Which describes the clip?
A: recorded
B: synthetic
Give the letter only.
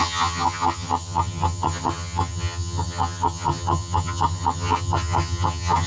B